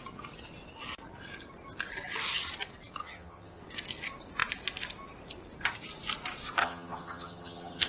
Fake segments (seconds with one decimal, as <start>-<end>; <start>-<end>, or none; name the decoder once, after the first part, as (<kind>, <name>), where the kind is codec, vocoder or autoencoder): 3.0-3.6 (vocoder, HiFi-GAN); 6.6-7.9